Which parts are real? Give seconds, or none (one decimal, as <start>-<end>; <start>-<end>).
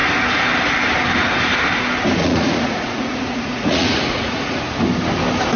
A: 0.0-2.2; 4.6-5.6